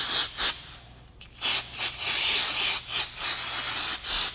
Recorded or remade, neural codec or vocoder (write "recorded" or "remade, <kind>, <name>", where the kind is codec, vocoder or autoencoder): recorded